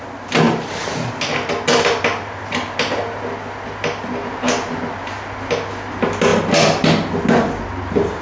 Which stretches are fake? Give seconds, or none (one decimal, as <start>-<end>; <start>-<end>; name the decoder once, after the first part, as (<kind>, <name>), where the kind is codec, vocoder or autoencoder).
none